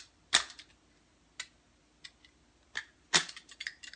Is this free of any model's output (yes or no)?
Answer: yes